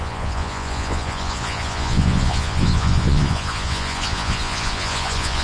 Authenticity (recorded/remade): remade